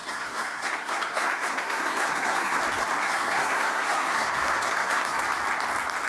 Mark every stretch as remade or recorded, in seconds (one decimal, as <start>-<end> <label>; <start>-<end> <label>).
0.0-2.6 remade; 2.6-3.0 recorded; 3.0-5.2 remade; 5.2-6.1 recorded